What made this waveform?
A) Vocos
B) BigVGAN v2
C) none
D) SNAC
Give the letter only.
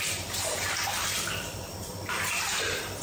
B